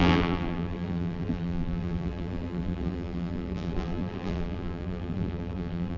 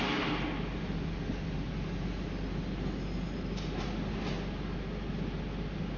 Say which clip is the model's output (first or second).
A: first